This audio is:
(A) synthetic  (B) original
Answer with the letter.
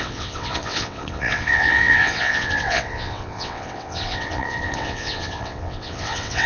A